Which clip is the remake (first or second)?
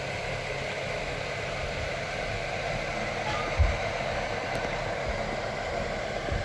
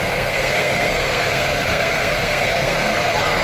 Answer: second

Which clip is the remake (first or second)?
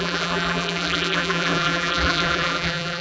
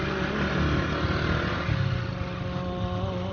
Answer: first